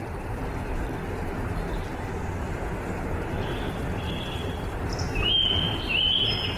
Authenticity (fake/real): real